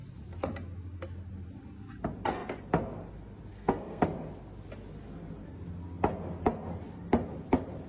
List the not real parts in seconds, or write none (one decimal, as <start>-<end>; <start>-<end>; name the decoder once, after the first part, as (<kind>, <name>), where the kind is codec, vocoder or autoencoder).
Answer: 3.5-4.0 (codec, SNAC)